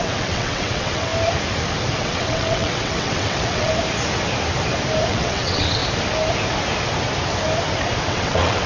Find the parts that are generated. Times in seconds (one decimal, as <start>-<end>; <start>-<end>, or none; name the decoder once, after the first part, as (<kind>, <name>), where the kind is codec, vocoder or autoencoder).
0.0-1.1 (vocoder, WaveNeXt); 2.0-3.7; 5.1-5.8; 8.1-8.7